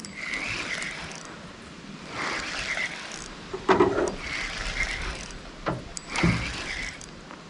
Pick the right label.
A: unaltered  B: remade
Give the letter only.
A